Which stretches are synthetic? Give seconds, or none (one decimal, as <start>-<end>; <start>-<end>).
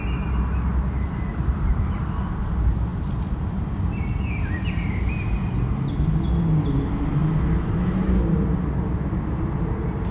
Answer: 1.3-2.0; 2.9-4.3